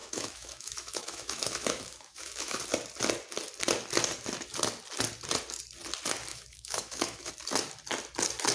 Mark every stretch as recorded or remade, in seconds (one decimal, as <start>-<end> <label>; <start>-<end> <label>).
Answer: 0.0-2.6 remade; 2.6-6.3 recorded; 6.3-7.3 remade; 7.3-8.5 recorded